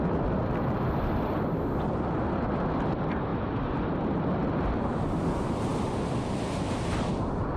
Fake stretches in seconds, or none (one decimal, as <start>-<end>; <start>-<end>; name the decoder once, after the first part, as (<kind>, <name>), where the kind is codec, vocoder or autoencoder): none